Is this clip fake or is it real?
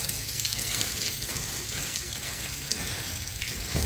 fake